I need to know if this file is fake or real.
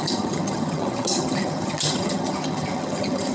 fake